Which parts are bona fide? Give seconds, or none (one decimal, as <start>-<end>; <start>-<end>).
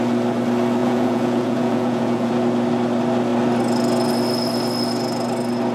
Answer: 0.0-0.8; 2.3-5.7